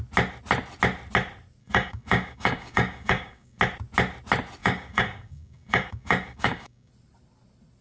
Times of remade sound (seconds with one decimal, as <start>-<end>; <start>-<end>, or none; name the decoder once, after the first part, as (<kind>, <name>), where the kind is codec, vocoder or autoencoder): 1.6-3.6 (codec, DAC); 4.6-6.9